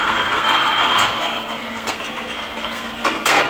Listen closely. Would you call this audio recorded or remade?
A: remade